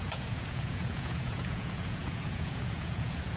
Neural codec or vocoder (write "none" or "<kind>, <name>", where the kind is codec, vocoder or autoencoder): vocoder, Vocos